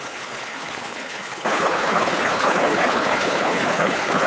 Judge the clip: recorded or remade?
remade